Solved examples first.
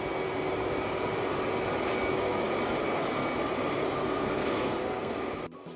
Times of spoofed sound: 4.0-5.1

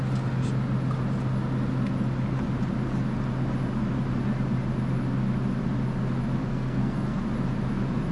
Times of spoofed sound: 6.5-7.2

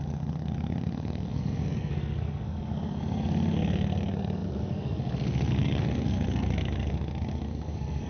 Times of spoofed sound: 0.0-8.1

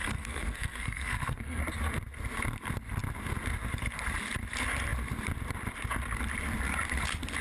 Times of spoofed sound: 0.0-1.6

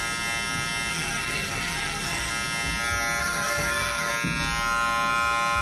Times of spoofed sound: 0.9-2.3; 3.2-4.1

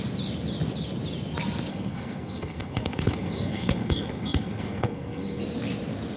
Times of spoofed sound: 1.7-5.4

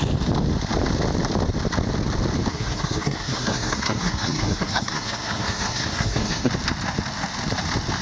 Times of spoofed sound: 2.5-6.5